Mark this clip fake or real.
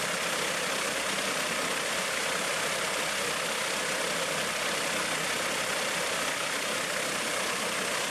real